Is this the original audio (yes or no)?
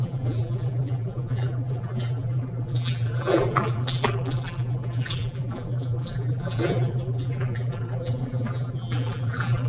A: no